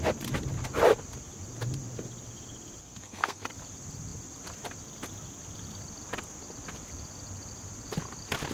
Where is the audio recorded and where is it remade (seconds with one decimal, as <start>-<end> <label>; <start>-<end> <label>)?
0.0-2.8 recorded; 2.8-3.5 remade; 3.5-8.5 recorded